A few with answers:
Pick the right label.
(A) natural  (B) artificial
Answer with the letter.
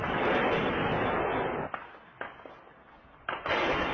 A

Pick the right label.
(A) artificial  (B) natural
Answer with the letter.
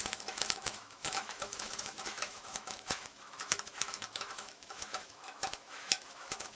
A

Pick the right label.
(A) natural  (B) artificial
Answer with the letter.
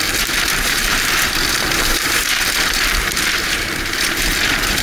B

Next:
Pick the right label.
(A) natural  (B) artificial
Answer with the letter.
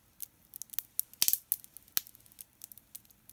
A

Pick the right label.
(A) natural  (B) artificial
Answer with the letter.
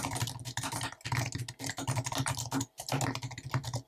A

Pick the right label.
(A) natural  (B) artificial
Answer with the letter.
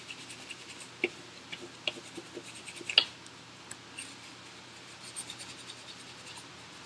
A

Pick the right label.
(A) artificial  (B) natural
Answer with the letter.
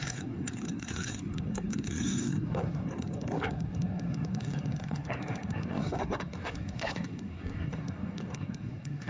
A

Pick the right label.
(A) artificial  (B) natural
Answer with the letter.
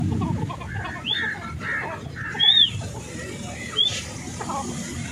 B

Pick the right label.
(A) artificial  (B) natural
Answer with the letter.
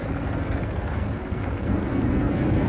A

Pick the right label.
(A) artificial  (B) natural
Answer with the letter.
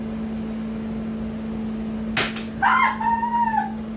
B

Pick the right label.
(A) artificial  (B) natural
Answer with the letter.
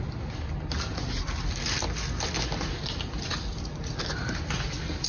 B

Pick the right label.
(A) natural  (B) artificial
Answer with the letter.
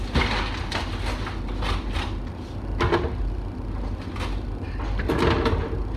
A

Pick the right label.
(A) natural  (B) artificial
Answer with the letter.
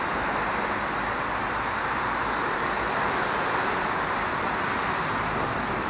A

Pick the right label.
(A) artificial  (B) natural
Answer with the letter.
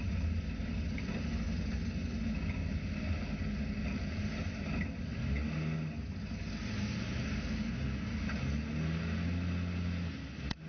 B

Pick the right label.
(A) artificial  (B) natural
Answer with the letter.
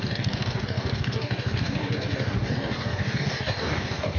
A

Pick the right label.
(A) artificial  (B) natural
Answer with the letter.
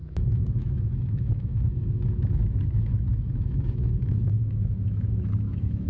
A